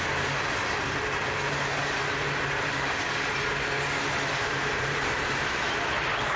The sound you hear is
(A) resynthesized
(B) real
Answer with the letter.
B